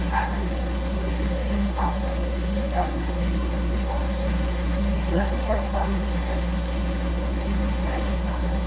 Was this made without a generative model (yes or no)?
no